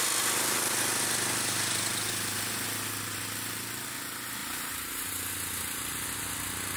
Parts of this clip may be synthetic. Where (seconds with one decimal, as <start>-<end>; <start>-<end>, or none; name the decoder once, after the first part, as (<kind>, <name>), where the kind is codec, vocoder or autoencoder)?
4.4-5.1 (vocoder, BigVGAN v2)